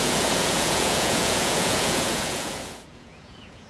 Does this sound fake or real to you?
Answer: fake